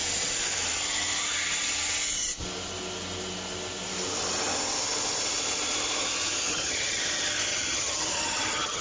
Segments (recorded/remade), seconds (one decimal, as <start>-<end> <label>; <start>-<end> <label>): 0.0-6.5 recorded; 6.5-7.0 remade; 7.0-7.5 recorded; 7.5-8.8 remade